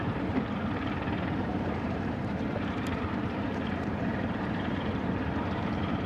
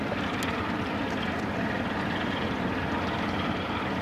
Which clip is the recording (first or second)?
second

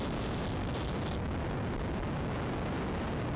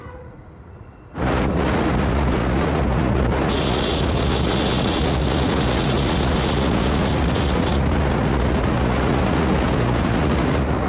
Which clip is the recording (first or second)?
first